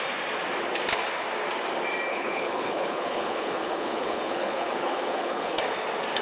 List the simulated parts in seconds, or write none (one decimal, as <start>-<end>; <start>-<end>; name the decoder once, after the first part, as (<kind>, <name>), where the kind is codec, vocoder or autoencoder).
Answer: 2.1-5.6 (codec, HILCodec)